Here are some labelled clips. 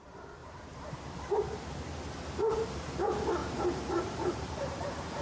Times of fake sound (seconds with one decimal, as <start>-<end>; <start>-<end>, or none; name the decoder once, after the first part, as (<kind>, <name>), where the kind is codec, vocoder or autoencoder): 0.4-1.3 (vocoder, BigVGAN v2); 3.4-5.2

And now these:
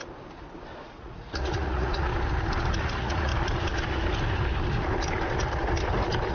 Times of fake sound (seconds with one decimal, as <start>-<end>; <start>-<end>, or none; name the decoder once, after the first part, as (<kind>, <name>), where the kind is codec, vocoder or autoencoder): 0.8-2.1 (vocoder, Vocos); 2.8-3.3

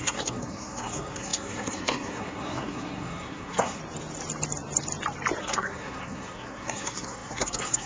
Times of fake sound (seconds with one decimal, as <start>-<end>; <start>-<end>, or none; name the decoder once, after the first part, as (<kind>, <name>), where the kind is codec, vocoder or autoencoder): 0.0-3.8 (codec, SNAC); 5.4-7.9